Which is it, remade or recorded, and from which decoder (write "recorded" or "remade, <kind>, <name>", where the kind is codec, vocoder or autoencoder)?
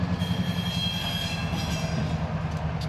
recorded